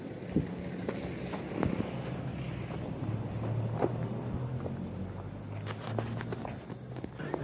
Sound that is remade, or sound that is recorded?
recorded